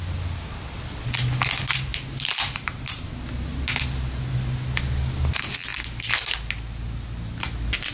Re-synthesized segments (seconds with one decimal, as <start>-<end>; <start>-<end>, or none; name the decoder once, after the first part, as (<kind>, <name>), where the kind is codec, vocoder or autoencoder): 1.9-3.0 (vocoder, BigVGAN v2)

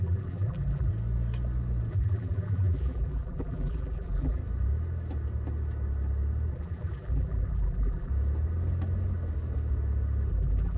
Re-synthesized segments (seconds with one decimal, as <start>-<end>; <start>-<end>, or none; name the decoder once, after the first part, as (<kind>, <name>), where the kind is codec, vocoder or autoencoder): 0.0-0.9 (vocoder, BigVGAN v2); 1.9-4.4; 6.5-8.1; 10.3-10.8

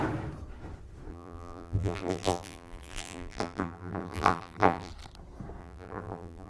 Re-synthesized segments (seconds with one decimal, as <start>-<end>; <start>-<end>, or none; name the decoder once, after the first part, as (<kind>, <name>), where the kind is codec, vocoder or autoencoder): 1.1-4.9 (vocoder, BigVGAN v2); 5.6-6.5

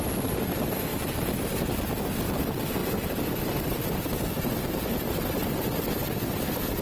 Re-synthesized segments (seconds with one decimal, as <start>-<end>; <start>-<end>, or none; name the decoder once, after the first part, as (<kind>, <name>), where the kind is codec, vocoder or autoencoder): 0.9-1.6 (vocoder, BigVGAN v2)

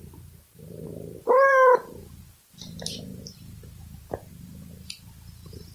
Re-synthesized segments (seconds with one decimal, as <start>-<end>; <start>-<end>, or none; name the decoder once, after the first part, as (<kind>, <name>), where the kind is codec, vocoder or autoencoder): 0.0-5.7 (vocoder, BigVGAN v2)

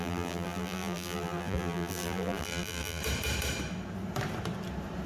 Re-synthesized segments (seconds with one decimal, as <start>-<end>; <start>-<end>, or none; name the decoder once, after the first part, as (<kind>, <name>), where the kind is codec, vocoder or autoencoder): 0.0-3.0 (vocoder, BigVGAN v2)